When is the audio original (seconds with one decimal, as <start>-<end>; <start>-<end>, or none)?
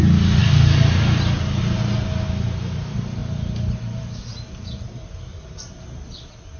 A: 0.0-6.6